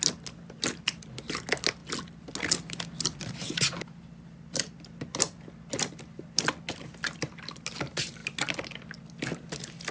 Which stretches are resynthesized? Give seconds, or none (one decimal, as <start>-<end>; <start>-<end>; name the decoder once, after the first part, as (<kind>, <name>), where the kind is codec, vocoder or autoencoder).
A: none